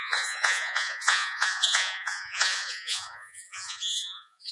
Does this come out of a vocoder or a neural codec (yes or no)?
yes